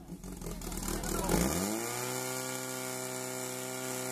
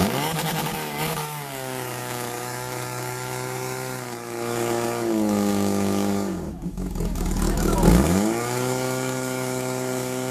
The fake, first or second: second